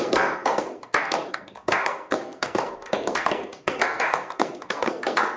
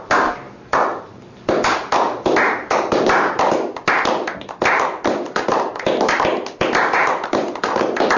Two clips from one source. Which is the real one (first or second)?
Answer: second